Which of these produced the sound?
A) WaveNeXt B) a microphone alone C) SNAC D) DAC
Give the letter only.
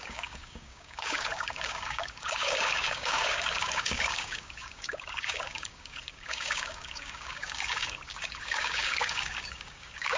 D